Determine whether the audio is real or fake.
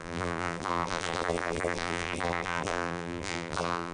fake